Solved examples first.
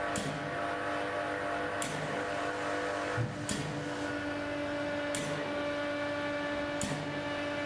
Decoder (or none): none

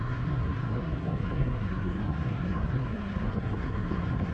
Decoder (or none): codec, SNAC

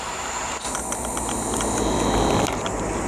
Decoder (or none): none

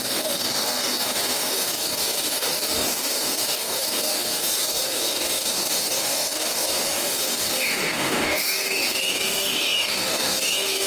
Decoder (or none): codec, DAC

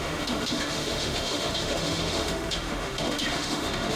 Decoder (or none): autoencoder, DAC-VAE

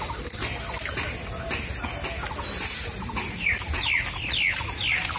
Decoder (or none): none